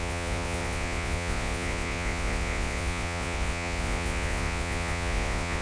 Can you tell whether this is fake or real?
fake